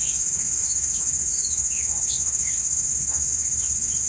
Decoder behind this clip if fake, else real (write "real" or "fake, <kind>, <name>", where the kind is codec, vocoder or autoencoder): fake, autoencoder, DAC-VAE